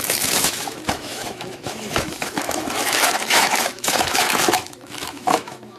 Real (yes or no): no